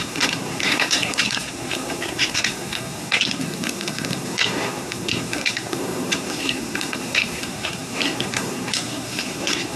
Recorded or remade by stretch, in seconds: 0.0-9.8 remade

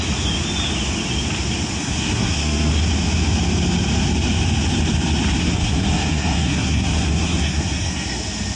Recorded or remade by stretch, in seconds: 0.0-1.8 recorded; 1.8-2.7 remade; 2.7-5.4 recorded; 5.4-8.2 remade; 8.2-8.6 recorded